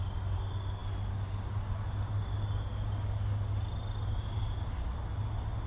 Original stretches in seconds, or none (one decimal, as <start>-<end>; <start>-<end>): 0.0-5.7